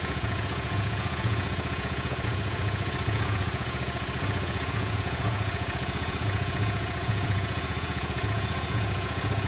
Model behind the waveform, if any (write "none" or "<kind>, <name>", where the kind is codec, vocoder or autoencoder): vocoder, Vocos